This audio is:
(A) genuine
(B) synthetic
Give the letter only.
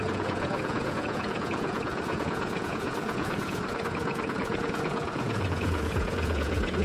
B